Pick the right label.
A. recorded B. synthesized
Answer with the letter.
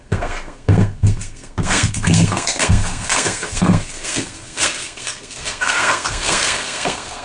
B